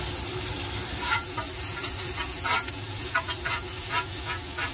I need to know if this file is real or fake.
fake